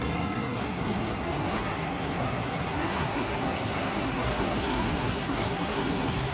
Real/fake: fake